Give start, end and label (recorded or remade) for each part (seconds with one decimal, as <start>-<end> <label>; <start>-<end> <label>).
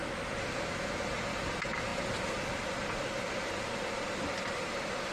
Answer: 0.0-0.5 remade; 0.5-1.9 recorded; 1.9-5.1 remade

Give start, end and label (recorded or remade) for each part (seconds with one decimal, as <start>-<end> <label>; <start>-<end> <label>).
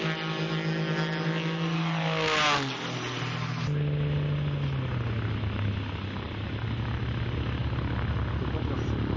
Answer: 0.0-9.2 recorded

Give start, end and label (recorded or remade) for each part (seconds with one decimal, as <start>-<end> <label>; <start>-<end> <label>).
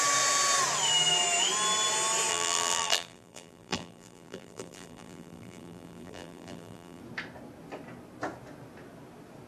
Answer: 0.0-2.3 recorded; 2.3-7.0 remade; 7.0-9.5 recorded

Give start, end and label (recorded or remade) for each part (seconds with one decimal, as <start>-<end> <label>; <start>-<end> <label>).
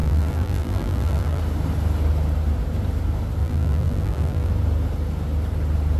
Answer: 0.0-1.4 remade; 1.4-3.4 recorded; 3.4-4.5 remade; 4.5-6.0 recorded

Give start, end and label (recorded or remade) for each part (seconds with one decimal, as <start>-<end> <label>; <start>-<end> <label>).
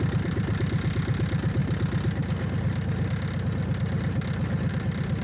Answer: 0.0-1.6 remade; 1.6-4.7 recorded; 4.7-5.2 remade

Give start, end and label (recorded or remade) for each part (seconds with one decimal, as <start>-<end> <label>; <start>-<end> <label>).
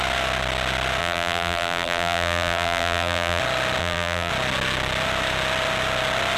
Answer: 0.0-1.0 recorded; 1.0-3.4 remade; 3.4-3.8 recorded; 3.8-4.3 remade; 4.3-6.4 recorded